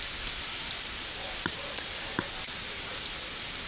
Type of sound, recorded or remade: recorded